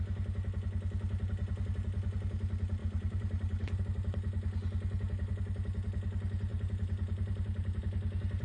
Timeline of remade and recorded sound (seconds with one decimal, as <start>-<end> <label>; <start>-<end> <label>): 0.0-2.8 recorded; 2.8-3.8 remade; 3.8-6.5 recorded; 6.5-7.8 remade; 7.8-8.4 recorded